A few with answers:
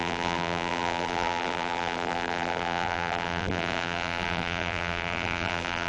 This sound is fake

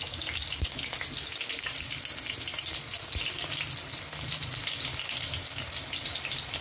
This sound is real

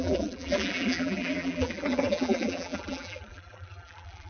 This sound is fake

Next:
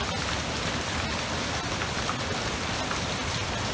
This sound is real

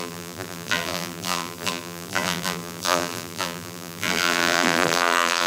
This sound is fake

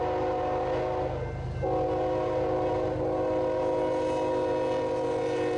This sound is real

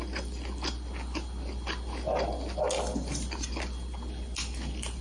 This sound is real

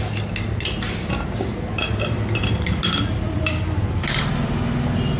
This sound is fake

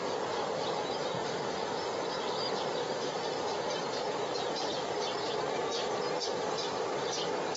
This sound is real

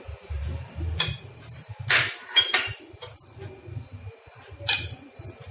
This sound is fake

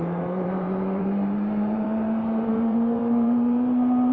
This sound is fake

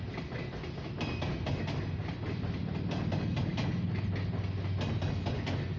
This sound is real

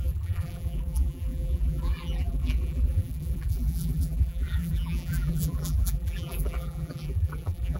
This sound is fake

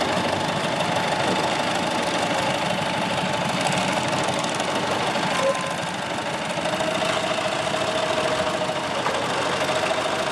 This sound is real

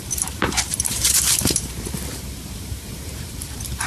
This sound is fake